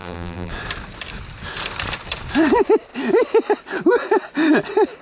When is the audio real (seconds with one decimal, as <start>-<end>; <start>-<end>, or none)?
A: 0.5-5.0